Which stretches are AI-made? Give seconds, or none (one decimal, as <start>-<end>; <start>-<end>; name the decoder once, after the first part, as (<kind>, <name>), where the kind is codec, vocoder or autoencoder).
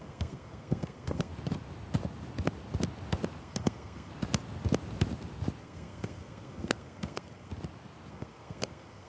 0.0-1.3 (codec, SNAC); 3.4-4.1; 5.6-7.5; 8.1-9.1